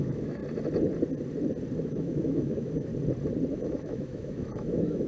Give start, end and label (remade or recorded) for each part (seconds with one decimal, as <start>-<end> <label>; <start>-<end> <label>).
0.0-0.4 remade; 0.4-1.8 recorded; 1.8-2.9 remade; 2.9-3.5 recorded; 3.5-5.1 remade